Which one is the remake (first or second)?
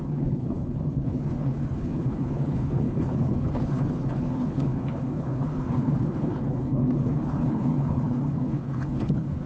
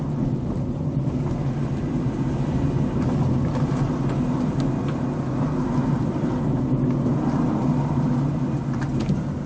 first